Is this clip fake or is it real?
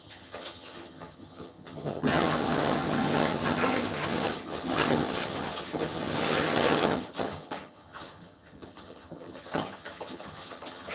fake